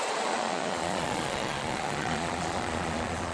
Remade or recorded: remade